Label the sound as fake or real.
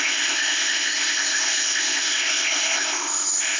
fake